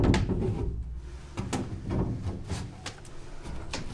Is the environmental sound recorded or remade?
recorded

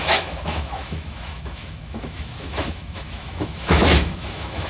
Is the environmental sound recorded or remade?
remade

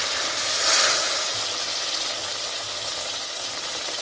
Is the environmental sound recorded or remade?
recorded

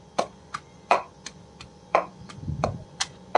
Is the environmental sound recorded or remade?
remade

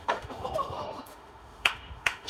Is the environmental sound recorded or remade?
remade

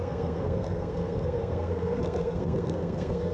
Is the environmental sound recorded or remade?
remade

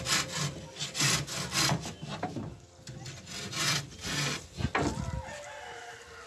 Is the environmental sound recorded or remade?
recorded